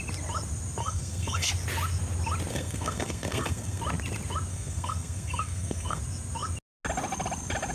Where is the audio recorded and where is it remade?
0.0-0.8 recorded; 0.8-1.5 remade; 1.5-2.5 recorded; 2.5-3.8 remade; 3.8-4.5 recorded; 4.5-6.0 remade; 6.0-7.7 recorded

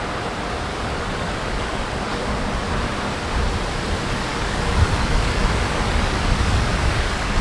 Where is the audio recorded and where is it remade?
0.0-0.7 recorded; 0.7-2.7 remade; 2.7-4.3 recorded; 4.3-7.4 remade

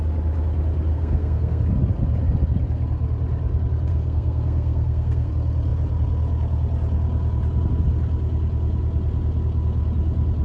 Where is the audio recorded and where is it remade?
0.0-0.9 recorded; 0.9-1.6 remade; 1.6-3.9 recorded; 3.9-5.3 remade; 5.3-10.4 recorded

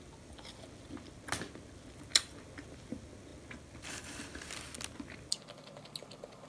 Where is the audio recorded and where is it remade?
0.0-6.5 recorded

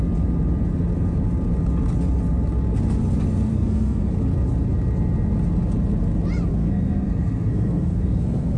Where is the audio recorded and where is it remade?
0.0-3.5 recorded; 3.5-4.1 remade; 4.1-6.5 recorded; 6.5-8.6 remade